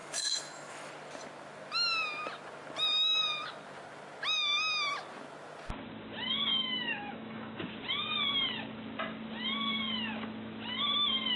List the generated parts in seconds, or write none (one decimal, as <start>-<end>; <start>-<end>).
0.0-0.9; 6.5-7.7

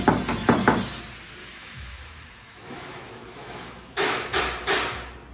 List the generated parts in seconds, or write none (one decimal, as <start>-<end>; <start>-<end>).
1.4-4.4

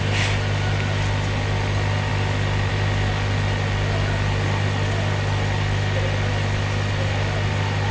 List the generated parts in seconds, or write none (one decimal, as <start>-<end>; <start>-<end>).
none

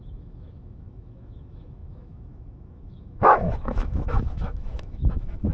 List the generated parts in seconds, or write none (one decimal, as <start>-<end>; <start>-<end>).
0.0-5.5

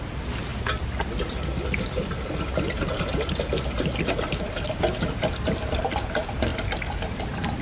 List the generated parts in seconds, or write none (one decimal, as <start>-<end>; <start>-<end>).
none

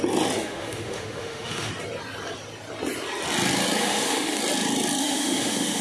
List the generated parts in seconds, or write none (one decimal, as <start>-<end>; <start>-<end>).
0.4-1.7; 3.8-4.4; 5.0-5.8